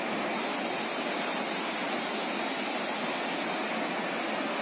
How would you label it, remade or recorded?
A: recorded